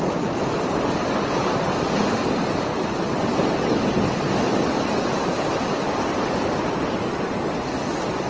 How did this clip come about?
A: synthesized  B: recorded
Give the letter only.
B